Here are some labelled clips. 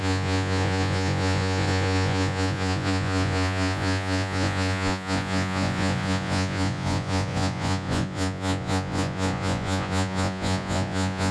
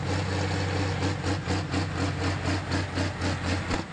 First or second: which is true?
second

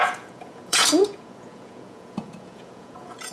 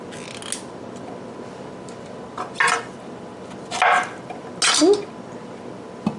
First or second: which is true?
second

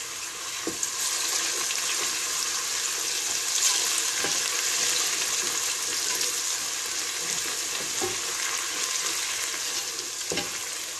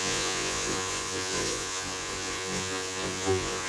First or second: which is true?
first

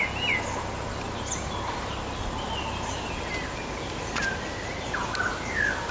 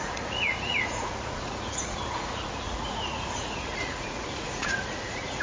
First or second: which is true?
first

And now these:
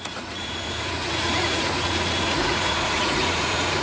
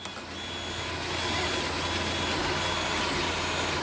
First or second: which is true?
second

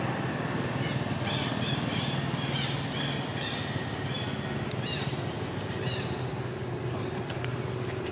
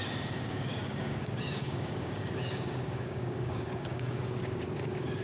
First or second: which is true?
first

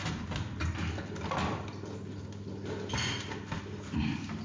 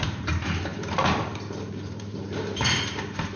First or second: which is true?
first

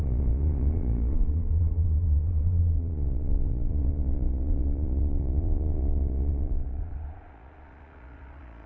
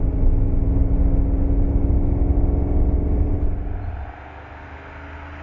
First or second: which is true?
second